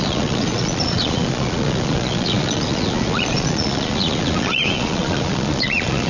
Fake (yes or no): yes